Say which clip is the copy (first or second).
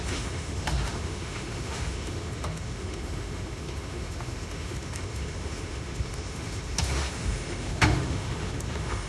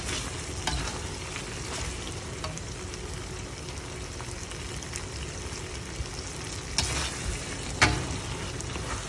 first